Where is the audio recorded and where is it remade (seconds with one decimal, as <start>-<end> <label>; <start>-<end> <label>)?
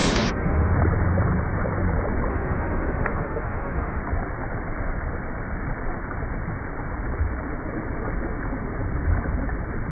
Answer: 0.0-0.7 remade; 0.7-2.3 recorded; 2.3-4.0 remade; 4.0-9.9 recorded